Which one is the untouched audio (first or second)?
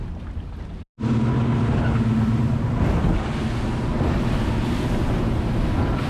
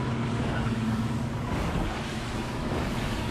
first